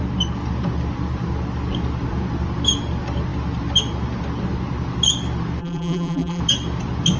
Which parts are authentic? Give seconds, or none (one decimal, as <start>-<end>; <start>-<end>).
0.0-5.6; 6.4-7.2

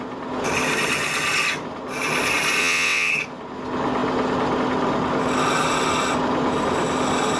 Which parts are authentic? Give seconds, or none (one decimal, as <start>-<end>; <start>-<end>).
0.0-2.6; 3.1-7.4

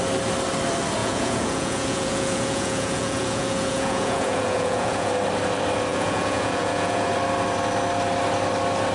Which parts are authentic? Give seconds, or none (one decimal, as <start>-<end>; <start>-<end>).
0.0-1.0; 5.1-5.9; 7.1-8.9

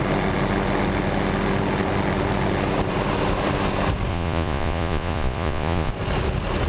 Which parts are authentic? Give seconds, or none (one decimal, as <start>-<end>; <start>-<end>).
0.0-4.1; 5.9-6.7